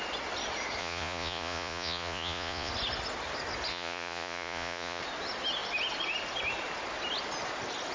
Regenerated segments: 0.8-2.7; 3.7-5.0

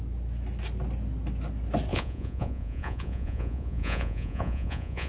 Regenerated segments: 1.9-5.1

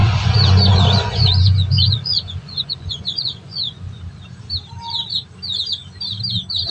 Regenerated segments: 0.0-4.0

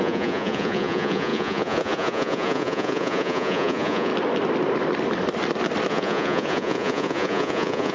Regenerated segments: 0.0-4.1; 5.9-7.9

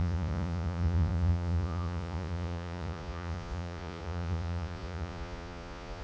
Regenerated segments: 0.0-6.0

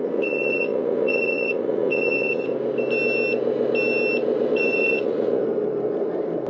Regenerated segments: 0.0-2.5; 4.5-5.4